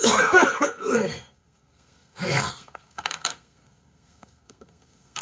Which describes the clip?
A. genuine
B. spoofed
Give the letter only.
B